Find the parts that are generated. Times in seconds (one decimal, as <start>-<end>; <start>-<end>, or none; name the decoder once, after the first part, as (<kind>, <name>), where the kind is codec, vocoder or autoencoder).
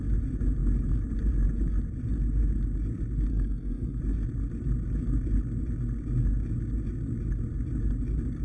3.3-4.0 (codec, SNAC)